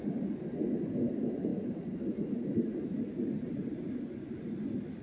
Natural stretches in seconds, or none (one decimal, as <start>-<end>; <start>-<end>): 0.0-5.0